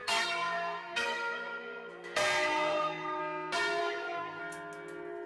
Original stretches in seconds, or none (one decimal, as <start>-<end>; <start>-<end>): 3.2-3.8; 4.4-5.3

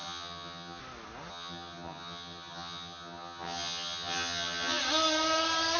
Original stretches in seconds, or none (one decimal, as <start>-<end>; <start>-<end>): 0.8-1.3; 4.8-5.8